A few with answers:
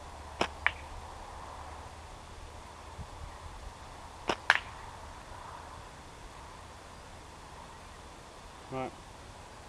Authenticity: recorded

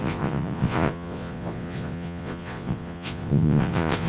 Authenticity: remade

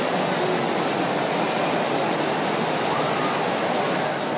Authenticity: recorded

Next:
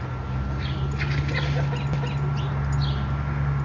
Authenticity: recorded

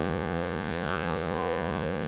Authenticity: remade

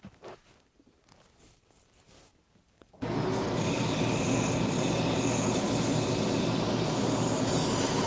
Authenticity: recorded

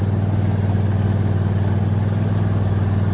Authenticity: recorded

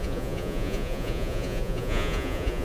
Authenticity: remade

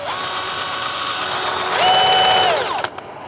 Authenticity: recorded